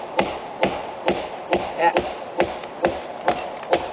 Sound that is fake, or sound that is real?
real